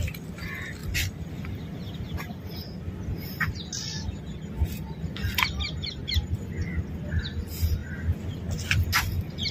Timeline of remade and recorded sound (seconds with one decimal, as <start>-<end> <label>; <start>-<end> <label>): 0.0-0.8 recorded; 0.8-2.7 remade; 2.7-7.8 recorded; 7.8-9.1 remade; 9.1-9.5 recorded